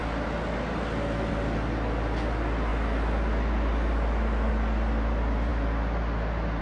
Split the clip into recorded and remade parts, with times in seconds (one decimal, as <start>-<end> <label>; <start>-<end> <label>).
0.0-6.6 recorded